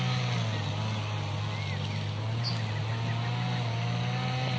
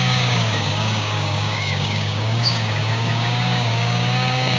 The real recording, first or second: first